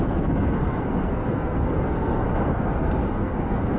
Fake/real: fake